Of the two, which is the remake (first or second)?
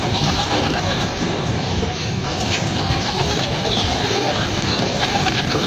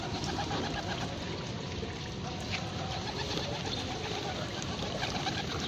first